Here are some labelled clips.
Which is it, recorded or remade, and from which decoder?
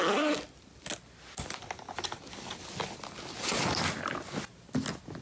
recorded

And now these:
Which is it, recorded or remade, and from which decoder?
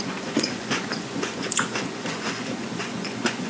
remade, vocoder, Vocos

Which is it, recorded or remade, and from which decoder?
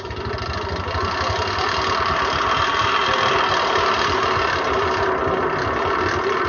recorded